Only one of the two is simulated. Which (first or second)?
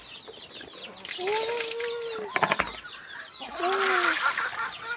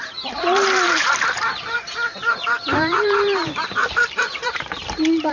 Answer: second